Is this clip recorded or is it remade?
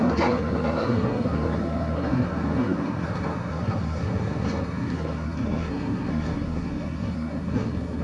remade